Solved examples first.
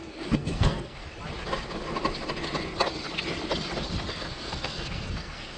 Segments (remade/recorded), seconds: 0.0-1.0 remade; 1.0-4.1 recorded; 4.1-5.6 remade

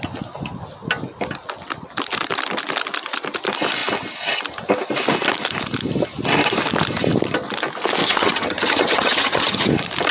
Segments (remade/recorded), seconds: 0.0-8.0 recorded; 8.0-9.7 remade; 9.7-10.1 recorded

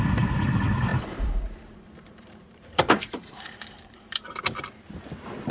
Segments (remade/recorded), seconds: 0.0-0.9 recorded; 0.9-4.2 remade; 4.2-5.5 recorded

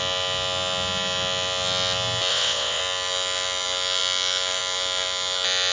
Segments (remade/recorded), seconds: 0.0-2.3 recorded; 2.3-2.8 remade; 2.8-5.7 recorded